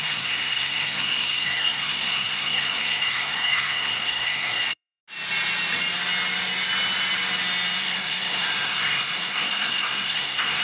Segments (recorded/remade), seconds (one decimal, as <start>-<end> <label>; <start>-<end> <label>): 0.0-5.0 remade; 5.0-7.8 recorded; 7.8-10.6 remade